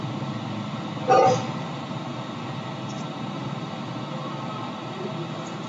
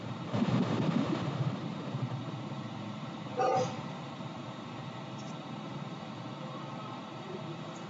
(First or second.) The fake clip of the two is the second